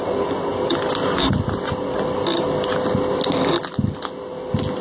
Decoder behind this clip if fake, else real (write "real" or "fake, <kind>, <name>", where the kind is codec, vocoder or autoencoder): real